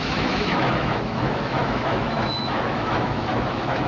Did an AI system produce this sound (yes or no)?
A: yes